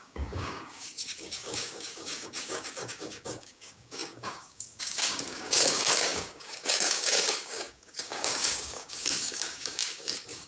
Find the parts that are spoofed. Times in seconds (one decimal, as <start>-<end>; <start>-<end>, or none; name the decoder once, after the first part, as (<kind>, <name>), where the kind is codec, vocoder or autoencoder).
0.0-10.5 (codec, DAC)

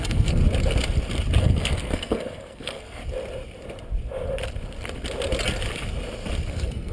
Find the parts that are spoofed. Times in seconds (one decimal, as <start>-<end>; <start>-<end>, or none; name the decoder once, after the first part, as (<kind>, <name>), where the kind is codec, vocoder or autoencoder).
0.0-0.4 (codec, SNAC); 1.4-3.0; 6.5-6.9

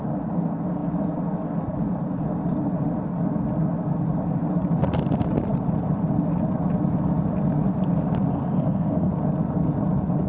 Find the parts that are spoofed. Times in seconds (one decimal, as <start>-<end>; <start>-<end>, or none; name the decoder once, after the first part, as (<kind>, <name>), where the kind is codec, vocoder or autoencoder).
8.3-9.1 (codec, SNAC)

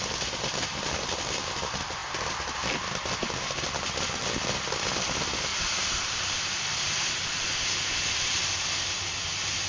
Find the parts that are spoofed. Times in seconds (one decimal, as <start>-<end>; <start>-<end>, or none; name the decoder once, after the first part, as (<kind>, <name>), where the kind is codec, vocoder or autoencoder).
5.5-8.4 (vocoder, BigVGAN v2)

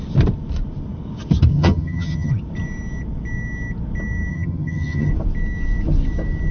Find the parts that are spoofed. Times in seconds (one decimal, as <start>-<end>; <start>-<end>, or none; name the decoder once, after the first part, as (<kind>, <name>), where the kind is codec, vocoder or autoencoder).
1.5-2.3 (vocoder, HiFi-GAN); 4.3-5.1